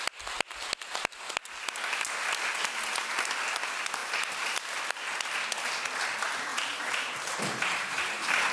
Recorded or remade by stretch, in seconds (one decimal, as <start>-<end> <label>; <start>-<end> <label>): 0.0-6.5 recorded; 6.5-8.5 remade